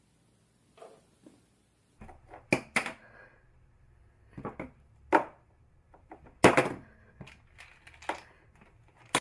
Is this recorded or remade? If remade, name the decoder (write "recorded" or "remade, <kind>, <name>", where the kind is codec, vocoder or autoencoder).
recorded